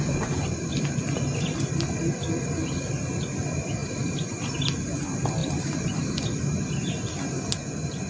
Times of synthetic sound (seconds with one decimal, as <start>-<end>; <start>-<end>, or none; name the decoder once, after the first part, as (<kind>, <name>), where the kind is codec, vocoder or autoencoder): 3.8-4.5 (vocoder, BigVGAN v2); 5.4-6.2